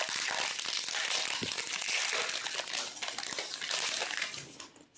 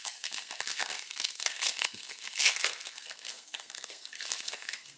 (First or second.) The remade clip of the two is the second